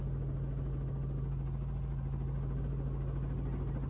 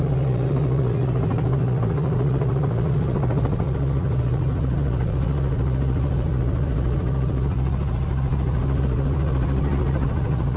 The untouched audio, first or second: first